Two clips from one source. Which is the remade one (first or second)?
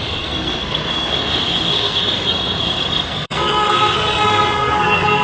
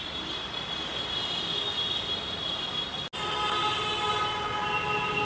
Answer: first